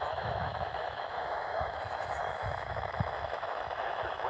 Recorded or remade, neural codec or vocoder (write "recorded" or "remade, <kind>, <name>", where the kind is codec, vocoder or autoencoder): remade, autoencoder, DAC-VAE